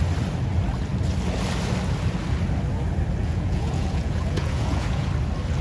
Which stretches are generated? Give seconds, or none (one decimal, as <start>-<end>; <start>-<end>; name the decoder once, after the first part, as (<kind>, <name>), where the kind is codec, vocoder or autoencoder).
3.2-5.1 (vocoder, Vocos)